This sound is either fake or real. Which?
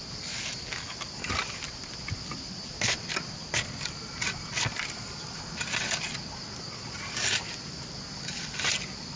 real